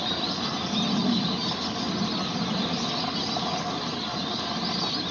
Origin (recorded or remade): recorded